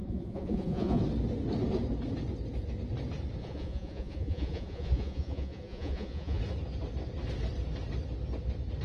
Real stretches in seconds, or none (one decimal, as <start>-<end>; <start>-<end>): 1.0-3.4; 6.4-8.8